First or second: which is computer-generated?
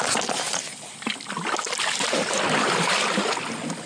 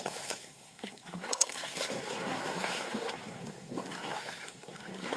second